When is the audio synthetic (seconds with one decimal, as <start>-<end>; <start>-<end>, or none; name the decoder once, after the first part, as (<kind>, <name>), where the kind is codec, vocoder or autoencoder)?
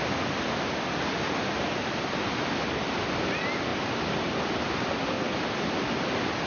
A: none